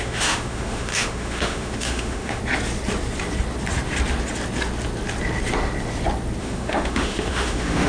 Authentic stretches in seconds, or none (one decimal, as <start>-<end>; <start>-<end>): 2.4-6.4

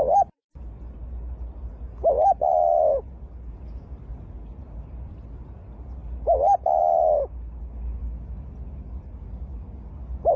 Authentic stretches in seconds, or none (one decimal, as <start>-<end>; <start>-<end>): 0.0-10.4

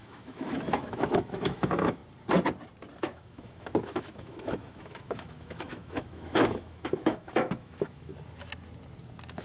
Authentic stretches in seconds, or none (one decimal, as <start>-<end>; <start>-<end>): 2.0-3.0; 8.1-9.4

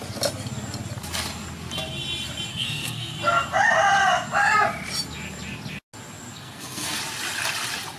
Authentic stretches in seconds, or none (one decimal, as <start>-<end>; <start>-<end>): 0.0-2.5; 3.2-6.3; 7.0-8.0